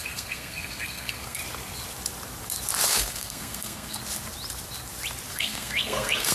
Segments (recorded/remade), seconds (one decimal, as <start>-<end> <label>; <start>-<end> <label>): 0.0-1.4 remade; 1.4-2.9 recorded; 2.9-4.0 remade; 4.0-5.3 recorded; 5.3-6.3 remade